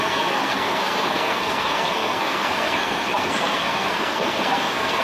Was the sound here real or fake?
fake